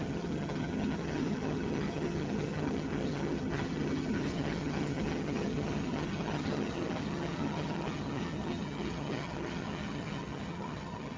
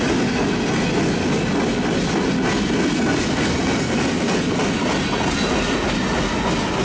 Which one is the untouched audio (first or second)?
second